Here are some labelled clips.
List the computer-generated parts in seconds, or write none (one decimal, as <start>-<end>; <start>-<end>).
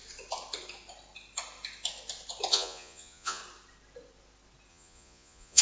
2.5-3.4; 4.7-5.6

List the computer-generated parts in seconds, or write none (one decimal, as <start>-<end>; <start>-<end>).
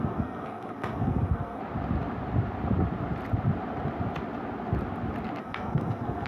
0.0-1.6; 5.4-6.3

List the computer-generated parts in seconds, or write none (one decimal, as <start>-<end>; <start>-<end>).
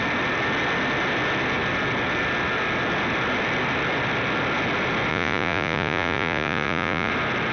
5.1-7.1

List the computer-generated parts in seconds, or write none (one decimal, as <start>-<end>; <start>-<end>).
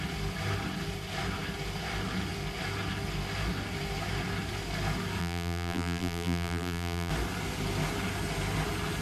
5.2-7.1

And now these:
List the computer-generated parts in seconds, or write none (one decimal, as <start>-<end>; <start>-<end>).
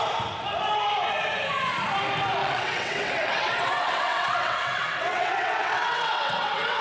2.4-6.8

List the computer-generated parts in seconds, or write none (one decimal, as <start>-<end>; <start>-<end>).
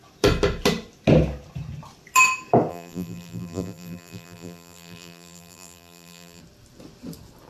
2.7-6.4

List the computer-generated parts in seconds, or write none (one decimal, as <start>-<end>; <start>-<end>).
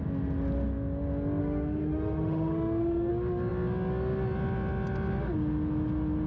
1.4-3.1